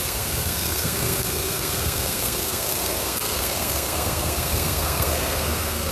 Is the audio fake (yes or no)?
yes